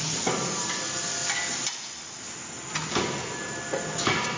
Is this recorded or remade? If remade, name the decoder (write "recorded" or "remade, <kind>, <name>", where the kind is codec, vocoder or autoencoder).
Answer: recorded